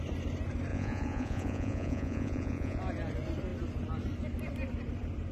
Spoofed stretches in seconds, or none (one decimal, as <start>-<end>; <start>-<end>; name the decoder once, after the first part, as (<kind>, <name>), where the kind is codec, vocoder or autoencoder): 0.7-2.8 (vocoder, Vocos)